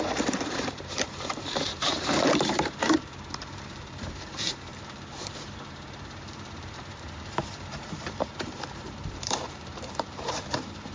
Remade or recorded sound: remade